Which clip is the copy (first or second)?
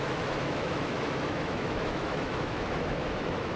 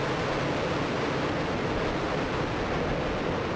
first